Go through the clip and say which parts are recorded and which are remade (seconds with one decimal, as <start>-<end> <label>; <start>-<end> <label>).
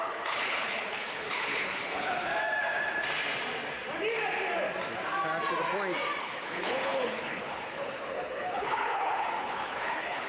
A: 0.0-2.3 remade; 2.3-6.2 recorded; 6.2-10.3 remade